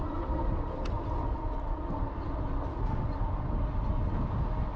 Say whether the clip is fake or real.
real